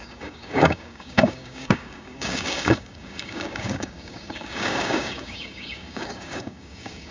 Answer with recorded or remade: remade